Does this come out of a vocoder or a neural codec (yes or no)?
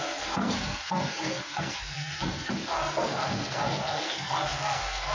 yes